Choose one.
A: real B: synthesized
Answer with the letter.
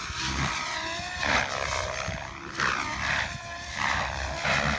A